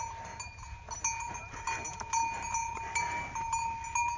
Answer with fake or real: real